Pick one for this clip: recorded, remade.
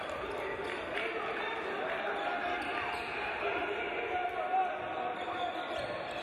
recorded